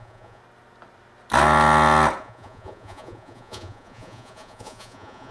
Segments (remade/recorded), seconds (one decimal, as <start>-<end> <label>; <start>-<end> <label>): 0.0-0.4 remade; 0.4-2.2 recorded; 2.2-5.3 remade